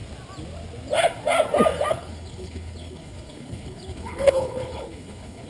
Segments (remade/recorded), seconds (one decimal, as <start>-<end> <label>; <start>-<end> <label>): 0.0-1.9 recorded; 1.9-5.5 remade